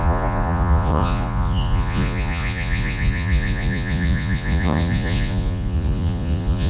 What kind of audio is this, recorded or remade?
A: remade